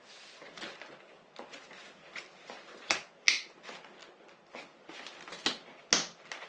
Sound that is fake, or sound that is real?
real